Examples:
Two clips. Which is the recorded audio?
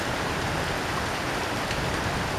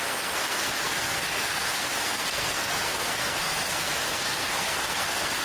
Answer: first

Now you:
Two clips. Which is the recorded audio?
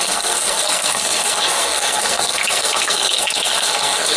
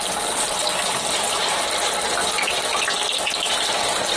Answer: second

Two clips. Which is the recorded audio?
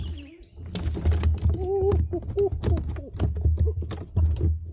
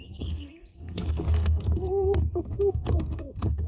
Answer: first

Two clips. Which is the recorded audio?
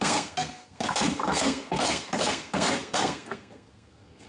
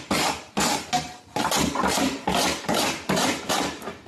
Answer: second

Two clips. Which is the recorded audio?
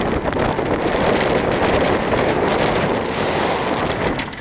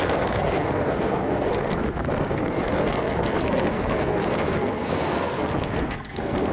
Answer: first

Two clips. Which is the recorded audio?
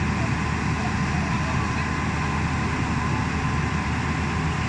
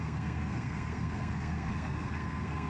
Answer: first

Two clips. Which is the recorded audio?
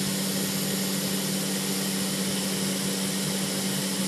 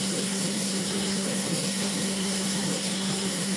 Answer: first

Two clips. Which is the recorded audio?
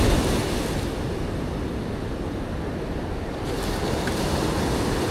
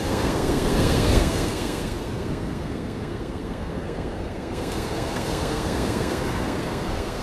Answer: first